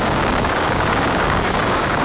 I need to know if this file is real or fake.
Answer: fake